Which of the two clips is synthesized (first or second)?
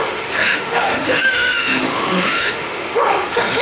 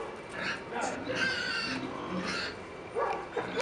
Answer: first